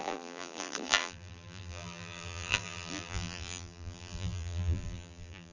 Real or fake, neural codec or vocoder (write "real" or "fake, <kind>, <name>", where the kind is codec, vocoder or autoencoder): fake, vocoder, BigVGAN v2